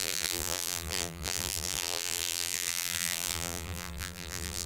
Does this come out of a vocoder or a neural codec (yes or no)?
yes